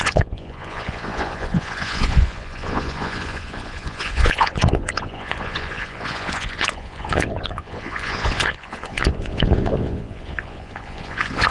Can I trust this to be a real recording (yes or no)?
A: no